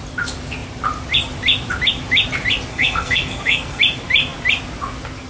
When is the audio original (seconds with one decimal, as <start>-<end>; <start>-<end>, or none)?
0.0-2.7; 3.8-5.3